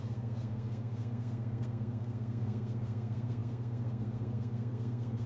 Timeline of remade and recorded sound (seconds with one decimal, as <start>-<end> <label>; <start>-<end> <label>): 0.0-5.3 remade

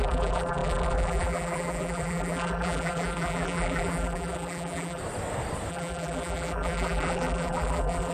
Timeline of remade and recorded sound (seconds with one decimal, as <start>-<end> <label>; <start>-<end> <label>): 0.0-5.0 remade; 5.0-5.7 recorded; 5.7-8.1 remade

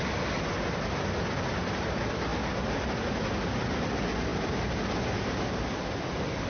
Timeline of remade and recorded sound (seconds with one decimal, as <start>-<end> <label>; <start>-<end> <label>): 0.0-6.5 recorded

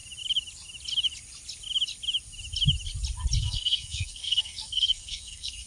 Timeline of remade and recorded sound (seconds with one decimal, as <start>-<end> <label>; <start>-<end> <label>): 0.0-3.4 recorded; 3.4-5.7 remade

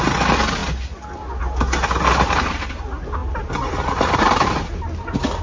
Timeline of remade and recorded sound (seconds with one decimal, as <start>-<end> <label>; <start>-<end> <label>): 0.0-5.4 recorded

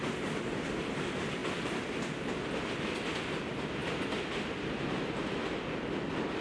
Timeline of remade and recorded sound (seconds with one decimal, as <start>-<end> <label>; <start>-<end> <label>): 0.0-6.4 recorded

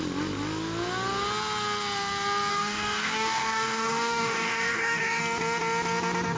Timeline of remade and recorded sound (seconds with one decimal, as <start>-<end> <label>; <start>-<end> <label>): 0.0-2.5 recorded; 2.5-5.2 remade; 5.2-6.4 recorded

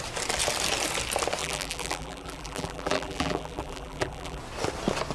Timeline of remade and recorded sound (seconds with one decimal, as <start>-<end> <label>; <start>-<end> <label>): 0.0-1.4 recorded; 1.4-4.4 remade; 4.4-5.1 recorded